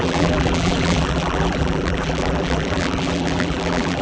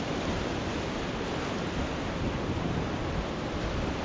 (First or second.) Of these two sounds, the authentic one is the second